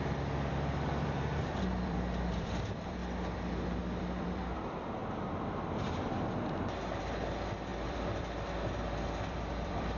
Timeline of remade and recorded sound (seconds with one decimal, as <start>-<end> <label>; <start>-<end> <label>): 0.0-3.0 remade; 3.0-4.0 recorded; 4.0-5.0 remade; 5.0-7.0 recorded; 7.0-10.0 remade